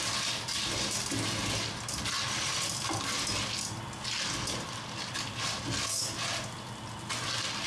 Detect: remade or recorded recorded